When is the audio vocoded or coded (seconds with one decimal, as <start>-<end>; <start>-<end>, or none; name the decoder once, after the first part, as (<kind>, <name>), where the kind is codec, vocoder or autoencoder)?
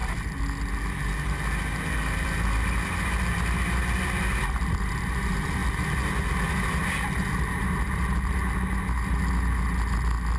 none